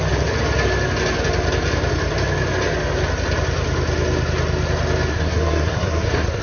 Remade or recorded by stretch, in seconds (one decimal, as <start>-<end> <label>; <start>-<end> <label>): 0.0-5.1 recorded; 5.1-6.4 remade